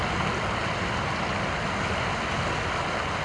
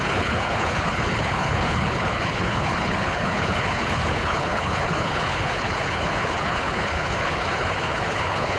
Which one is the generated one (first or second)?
second